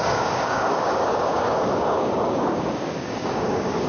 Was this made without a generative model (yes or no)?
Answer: no